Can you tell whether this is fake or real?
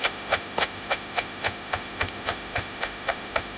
fake